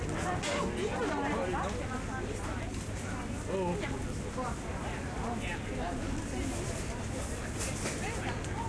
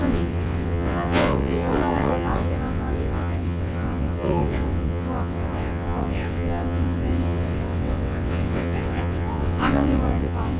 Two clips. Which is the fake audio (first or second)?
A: second